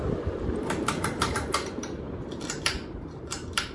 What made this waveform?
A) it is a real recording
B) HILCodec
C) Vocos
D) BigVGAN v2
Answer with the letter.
D